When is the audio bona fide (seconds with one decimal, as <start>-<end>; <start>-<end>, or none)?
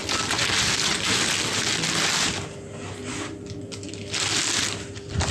0.0-5.3